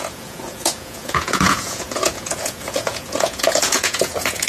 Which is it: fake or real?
fake